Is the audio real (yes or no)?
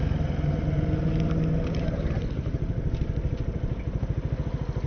yes